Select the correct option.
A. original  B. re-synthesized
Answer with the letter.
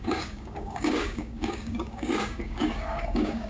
B